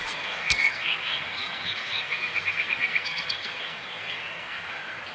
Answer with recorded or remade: remade